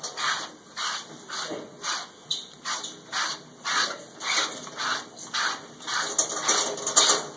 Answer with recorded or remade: recorded